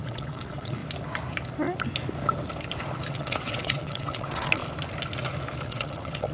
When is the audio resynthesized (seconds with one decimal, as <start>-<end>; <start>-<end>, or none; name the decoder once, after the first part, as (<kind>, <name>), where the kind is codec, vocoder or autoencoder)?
0.0-0.8 (vocoder, WaveNeXt); 3.1-4.6; 5.6-6.3